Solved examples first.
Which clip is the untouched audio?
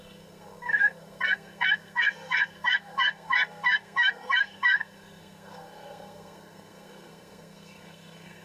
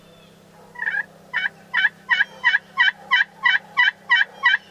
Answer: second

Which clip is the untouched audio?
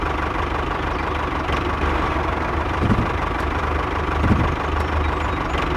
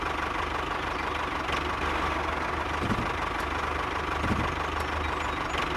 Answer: second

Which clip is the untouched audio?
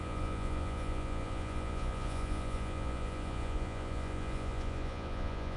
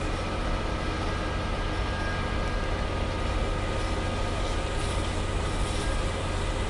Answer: second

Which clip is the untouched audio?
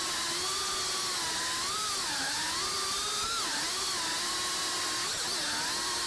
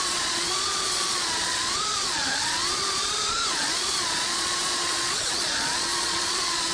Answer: first